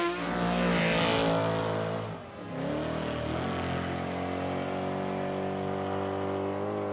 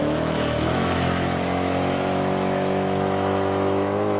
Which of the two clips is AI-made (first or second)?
second